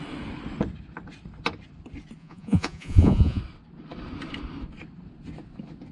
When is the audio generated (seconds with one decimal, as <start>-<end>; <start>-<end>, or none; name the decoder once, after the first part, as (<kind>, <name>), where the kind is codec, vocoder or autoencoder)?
2.2-3.4 (vocoder, Vocos)